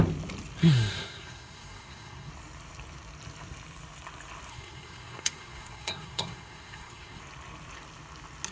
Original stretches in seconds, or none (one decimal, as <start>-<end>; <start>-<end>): 0.0-0.6; 2.3-4.5; 7.2-8.5

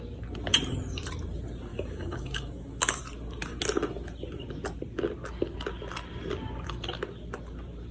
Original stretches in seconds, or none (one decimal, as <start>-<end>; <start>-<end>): 0.0-1.7; 3.0-7.9

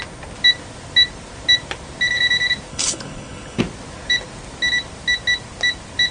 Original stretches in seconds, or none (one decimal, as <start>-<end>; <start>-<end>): 0.0-2.7; 3.6-6.1

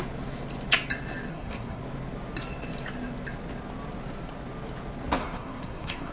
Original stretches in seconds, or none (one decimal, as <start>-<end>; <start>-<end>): 0.0-1.3; 1.8-5.2